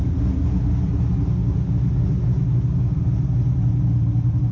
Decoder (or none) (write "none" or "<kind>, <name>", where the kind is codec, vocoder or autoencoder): none